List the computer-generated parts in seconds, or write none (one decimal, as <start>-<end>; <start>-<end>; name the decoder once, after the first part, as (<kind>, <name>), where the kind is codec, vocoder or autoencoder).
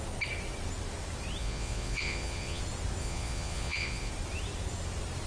1.4-2.6 (vocoder, Vocos); 3.0-4.1